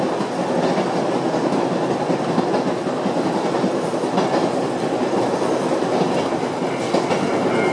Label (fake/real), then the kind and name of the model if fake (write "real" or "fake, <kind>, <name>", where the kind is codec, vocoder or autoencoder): real